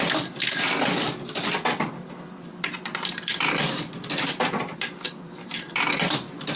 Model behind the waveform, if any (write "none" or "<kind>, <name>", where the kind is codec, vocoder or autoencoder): vocoder, BigVGAN v2